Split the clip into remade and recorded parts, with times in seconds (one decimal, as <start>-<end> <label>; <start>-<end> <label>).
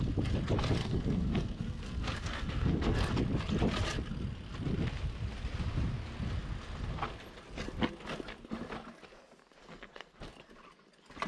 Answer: 0.0-0.8 recorded; 0.8-3.1 remade; 3.1-9.6 recorded; 9.6-10.3 remade; 10.3-11.3 recorded